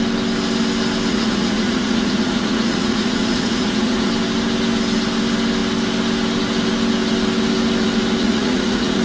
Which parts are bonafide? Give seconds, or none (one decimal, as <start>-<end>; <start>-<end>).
0.0-1.1; 4.1-8.2